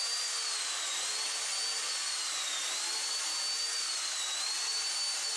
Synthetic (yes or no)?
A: no